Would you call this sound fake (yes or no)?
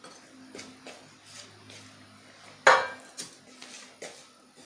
no